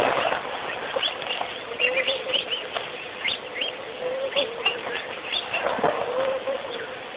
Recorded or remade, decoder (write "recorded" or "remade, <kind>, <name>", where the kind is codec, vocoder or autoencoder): recorded